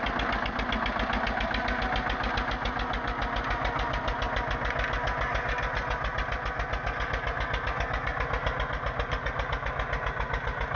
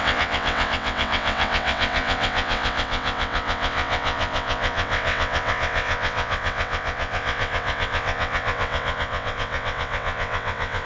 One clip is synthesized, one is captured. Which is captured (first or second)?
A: first